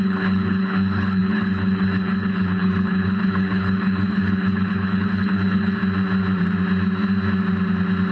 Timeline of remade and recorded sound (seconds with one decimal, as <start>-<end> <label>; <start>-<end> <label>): 0.0-5.8 remade; 5.8-8.1 recorded